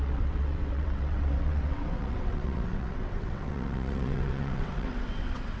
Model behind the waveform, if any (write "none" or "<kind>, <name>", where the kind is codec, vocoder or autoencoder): vocoder, WaveNeXt